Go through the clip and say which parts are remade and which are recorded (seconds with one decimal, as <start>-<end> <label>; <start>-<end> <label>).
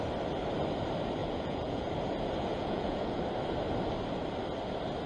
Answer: 0.0-1.2 recorded; 1.2-1.9 remade; 1.9-2.5 recorded; 2.5-3.2 remade; 3.2-5.1 recorded